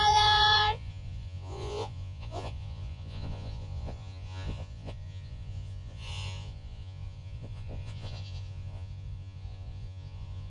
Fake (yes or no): yes